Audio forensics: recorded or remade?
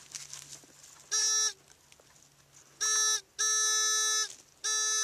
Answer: recorded